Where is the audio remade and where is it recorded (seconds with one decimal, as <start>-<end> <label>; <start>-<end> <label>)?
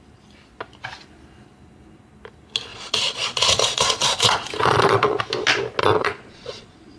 0.0-2.7 recorded; 2.7-5.2 remade; 5.2-5.8 recorded; 5.8-7.0 remade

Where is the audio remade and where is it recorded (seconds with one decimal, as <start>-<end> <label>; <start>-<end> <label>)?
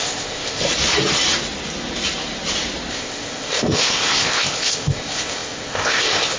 0.0-0.6 remade; 0.6-2.9 recorded; 2.9-6.4 remade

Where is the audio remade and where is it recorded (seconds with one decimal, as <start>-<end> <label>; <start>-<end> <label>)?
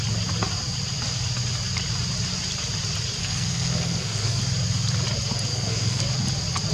0.0-3.2 recorded; 3.2-4.4 remade; 4.4-5.5 recorded; 5.5-6.0 remade; 6.0-6.7 recorded